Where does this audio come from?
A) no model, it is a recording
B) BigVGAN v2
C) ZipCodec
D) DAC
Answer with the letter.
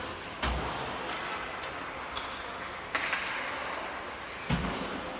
A